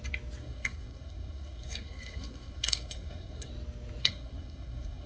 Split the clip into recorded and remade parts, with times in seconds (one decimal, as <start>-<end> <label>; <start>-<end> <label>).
0.0-0.4 recorded; 0.4-3.5 remade; 3.5-4.0 recorded; 4.0-5.1 remade

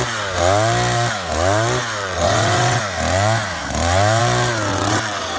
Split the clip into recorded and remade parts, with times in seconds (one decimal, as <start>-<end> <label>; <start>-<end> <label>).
0.0-2.0 recorded; 2.0-2.8 remade; 2.8-4.7 recorded; 4.7-5.4 remade

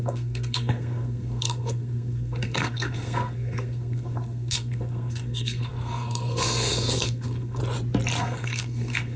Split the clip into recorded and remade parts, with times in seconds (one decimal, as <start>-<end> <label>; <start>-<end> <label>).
0.0-7.6 remade; 7.6-8.2 recorded; 8.2-9.2 remade

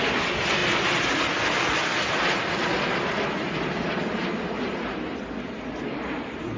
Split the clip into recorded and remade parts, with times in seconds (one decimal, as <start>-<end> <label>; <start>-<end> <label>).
0.0-6.6 recorded

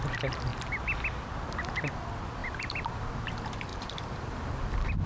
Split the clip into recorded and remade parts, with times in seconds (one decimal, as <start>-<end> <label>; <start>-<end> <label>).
0.0-2.4 recorded; 2.4-3.0 remade; 3.0-3.7 recorded; 3.7-5.1 remade